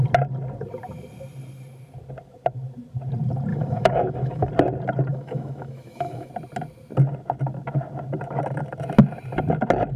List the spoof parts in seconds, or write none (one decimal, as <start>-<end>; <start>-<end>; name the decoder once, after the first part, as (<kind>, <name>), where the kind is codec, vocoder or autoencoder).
3.5-4.5 (autoencoder, DAC-VAE); 5.1-6.3